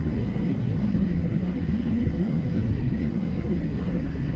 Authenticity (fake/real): fake